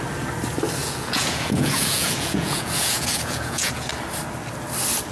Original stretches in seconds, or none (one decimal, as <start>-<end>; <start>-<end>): 0.0-0.8; 3.9-5.1